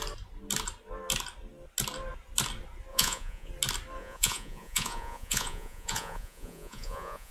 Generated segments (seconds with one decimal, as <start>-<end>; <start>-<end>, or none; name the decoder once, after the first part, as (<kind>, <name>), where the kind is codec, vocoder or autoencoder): 2.9-3.5 (vocoder, Vocos); 4.0-7.3